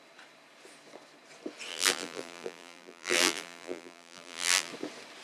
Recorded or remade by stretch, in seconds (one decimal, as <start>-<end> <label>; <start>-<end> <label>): 0.0-1.7 recorded; 1.7-4.7 remade; 4.7-5.2 recorded